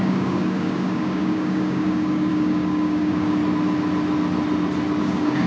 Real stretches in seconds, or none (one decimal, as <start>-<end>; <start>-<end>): 3.4-5.0